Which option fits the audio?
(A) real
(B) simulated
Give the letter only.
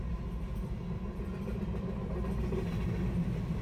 A